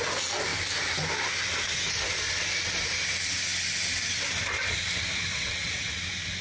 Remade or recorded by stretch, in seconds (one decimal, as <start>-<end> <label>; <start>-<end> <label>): 0.0-5.3 recorded; 5.3-6.0 remade; 6.0-6.4 recorded